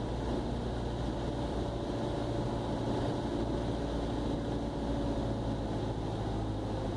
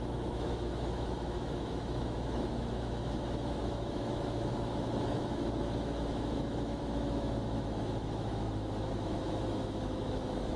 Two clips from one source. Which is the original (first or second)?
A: first